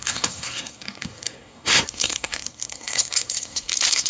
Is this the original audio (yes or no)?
no